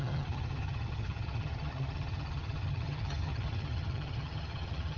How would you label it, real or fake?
fake